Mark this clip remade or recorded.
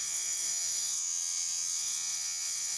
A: remade